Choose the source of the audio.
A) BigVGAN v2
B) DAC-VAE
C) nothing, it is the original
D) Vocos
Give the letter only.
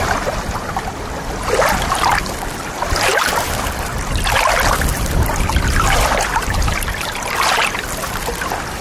C